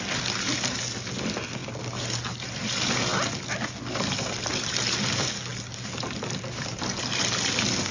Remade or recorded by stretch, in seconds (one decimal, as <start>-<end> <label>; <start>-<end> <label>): 0.0-7.9 recorded